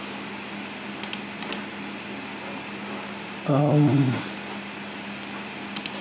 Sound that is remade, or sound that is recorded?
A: recorded